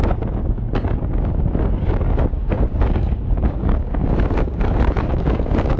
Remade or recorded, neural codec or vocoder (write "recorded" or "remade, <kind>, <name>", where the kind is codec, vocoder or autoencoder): remade, codec, DAC